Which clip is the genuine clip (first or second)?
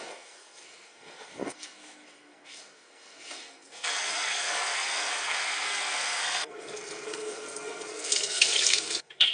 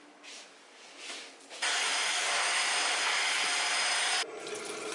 second